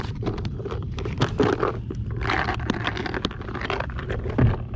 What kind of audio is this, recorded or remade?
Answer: recorded